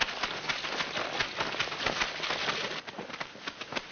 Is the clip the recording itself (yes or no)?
yes